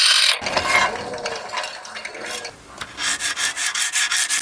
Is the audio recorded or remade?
recorded